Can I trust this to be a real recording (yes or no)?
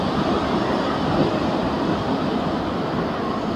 yes